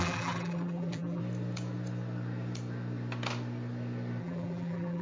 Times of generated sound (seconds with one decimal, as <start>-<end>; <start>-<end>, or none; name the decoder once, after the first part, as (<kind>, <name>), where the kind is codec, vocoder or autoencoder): 0.0-1.2 (vocoder, BigVGAN v2); 4.2-5.0